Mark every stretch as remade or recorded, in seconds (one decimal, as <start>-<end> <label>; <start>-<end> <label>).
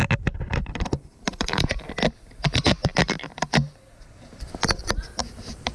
0.0-1.1 recorded; 1.1-1.8 remade; 1.8-5.7 recorded